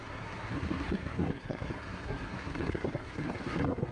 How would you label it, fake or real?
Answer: fake